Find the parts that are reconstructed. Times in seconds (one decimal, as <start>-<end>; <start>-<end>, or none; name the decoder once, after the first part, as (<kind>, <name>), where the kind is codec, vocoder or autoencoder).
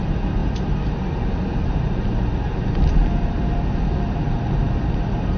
none